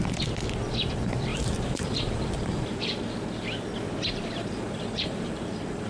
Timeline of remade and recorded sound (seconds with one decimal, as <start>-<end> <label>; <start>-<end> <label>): 0.0-1.3 recorded; 1.3-2.9 remade; 2.9-4.4 recorded; 4.4-5.9 remade